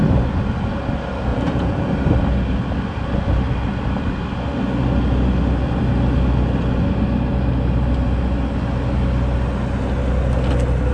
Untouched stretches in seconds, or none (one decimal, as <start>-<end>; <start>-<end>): 0.0-1.3; 1.9-10.9